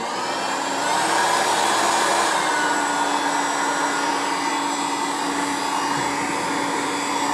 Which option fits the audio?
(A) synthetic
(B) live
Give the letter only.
B